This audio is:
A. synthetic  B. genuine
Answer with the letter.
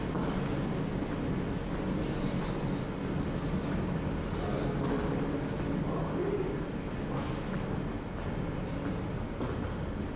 B